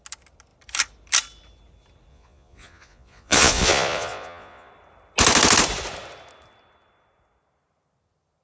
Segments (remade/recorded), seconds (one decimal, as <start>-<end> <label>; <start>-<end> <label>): 0.0-2.1 recorded; 2.1-4.7 remade; 4.7-8.4 recorded